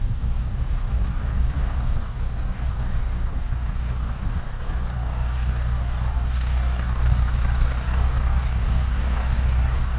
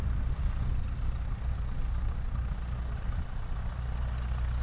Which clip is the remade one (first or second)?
first